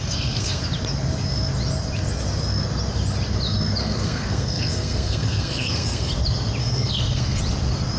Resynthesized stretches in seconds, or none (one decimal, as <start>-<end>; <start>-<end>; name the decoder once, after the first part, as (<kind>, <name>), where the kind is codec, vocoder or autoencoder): 0.0-0.6 (codec, SNAC); 3.8-6.1; 6.6-7.4